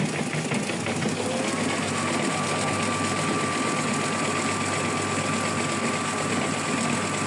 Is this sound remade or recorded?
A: recorded